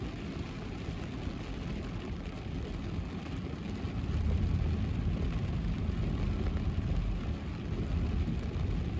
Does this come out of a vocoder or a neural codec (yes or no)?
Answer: no